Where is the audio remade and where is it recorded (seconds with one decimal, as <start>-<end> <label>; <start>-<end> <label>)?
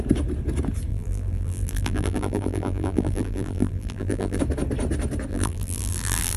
0.0-0.9 recorded; 0.9-4.4 remade; 4.4-5.3 recorded; 5.3-6.4 remade